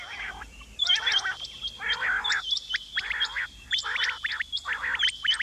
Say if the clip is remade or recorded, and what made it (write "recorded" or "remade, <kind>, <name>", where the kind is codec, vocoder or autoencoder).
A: recorded